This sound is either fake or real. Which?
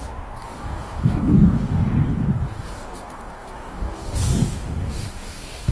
fake